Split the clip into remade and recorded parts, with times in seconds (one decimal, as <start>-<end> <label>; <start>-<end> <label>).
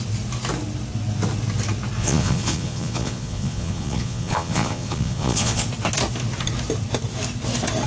0.0-2.0 recorded; 2.0-5.6 remade; 5.6-7.9 recorded